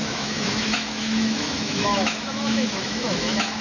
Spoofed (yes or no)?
yes